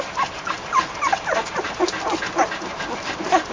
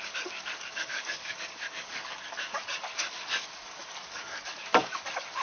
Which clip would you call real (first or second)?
first